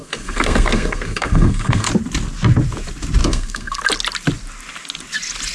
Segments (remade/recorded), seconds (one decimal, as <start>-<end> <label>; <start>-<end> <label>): 0.0-1.9 remade; 1.9-3.2 recorded; 3.2-3.8 remade; 3.8-5.5 recorded